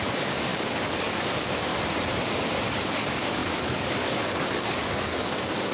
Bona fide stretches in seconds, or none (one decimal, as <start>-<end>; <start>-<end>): 1.7-2.8